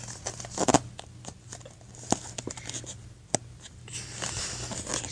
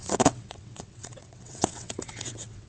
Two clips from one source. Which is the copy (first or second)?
second